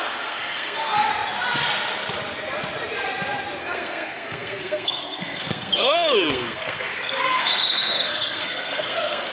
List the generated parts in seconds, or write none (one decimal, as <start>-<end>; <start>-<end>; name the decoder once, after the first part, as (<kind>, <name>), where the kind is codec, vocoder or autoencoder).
0.0-1.1 (codec, SNAC); 3.6-9.3